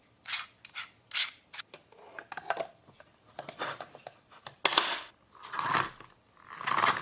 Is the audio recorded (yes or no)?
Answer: yes